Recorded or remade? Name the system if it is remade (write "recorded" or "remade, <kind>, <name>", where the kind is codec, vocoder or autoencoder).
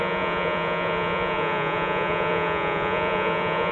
remade, vocoder, Vocos